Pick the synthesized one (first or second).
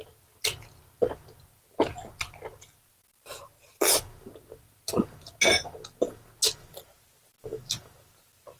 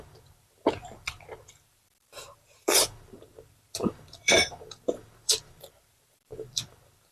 second